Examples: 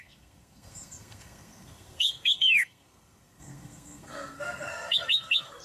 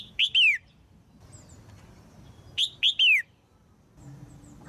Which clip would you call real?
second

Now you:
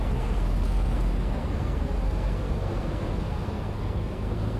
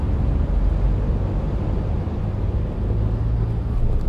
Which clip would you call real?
second